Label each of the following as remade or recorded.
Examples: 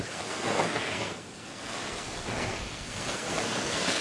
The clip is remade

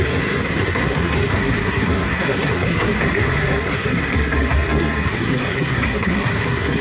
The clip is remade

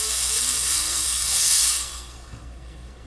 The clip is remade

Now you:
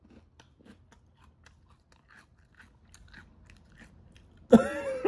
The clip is recorded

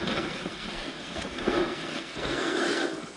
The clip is remade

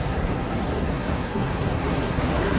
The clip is remade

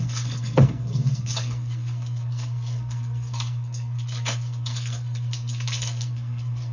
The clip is remade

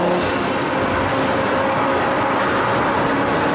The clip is recorded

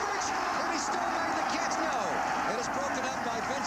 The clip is recorded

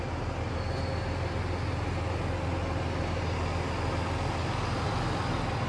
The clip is recorded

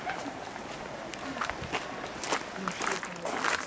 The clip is recorded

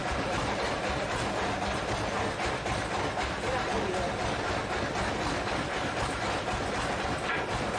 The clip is recorded